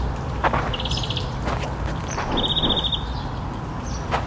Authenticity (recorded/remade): recorded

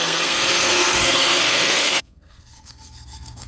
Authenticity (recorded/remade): remade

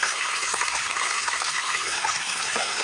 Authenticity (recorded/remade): remade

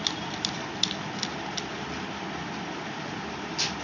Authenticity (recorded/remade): recorded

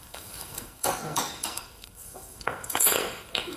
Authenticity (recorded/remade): remade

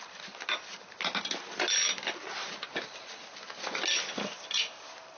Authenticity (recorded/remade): recorded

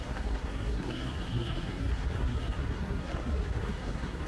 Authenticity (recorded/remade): remade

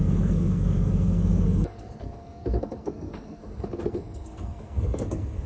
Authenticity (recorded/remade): remade